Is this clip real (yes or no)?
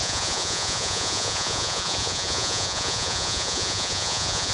no